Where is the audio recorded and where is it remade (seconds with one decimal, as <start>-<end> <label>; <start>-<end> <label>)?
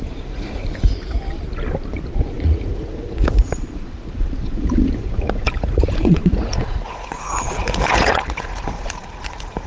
0.0-0.6 remade; 0.6-2.3 recorded; 2.3-9.7 remade